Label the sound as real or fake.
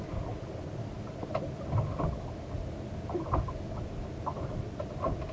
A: real